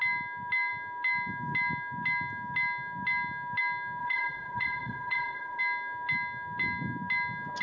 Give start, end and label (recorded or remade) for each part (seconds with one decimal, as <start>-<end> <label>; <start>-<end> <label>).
0.0-4.0 recorded; 4.0-5.6 remade; 5.6-7.6 recorded